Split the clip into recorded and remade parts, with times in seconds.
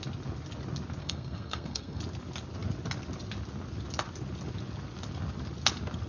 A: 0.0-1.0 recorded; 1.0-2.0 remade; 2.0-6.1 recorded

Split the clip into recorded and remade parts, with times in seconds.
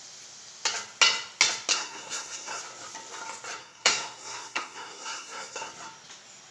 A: 0.0-1.7 recorded; 1.7-2.6 remade; 2.6-3.6 recorded; 3.6-5.7 remade; 5.7-6.5 recorded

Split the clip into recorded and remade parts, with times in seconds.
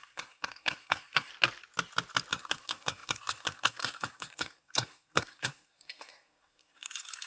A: 0.0-1.3 remade; 1.3-2.3 recorded; 2.3-7.3 remade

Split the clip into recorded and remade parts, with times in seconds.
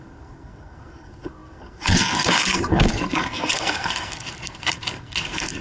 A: 0.0-5.6 remade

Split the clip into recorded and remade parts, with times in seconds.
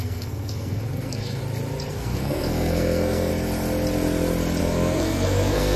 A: 0.0-1.4 remade; 1.4-1.9 recorded; 1.9-3.3 remade; 3.3-4.6 recorded; 4.6-5.8 remade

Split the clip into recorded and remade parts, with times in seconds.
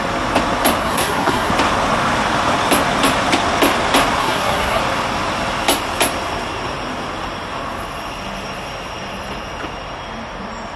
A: 0.0-0.8 recorded; 0.8-1.5 remade; 1.5-4.2 recorded; 4.2-4.8 remade; 4.8-10.8 recorded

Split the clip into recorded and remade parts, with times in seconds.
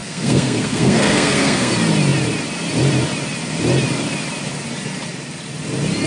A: 0.0-1.7 remade; 1.7-6.1 recorded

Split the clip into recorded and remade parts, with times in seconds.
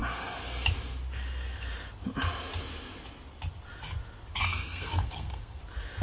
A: 0.0-4.6 recorded; 4.6-5.6 remade; 5.6-6.0 recorded